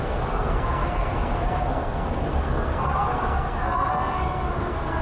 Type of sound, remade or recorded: remade